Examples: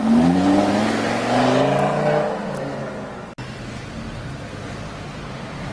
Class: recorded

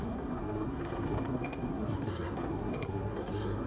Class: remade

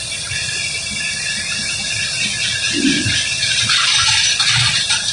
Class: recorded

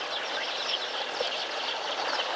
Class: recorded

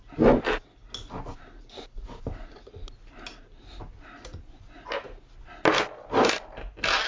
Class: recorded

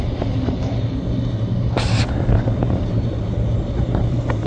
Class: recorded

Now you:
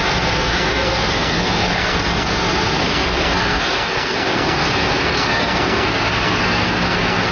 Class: remade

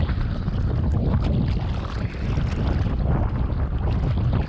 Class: recorded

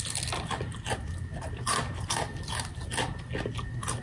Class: recorded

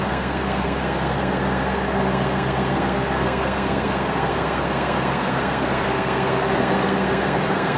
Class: remade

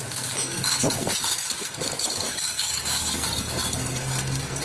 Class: remade